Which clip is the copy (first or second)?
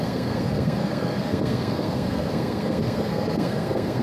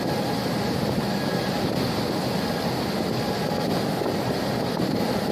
first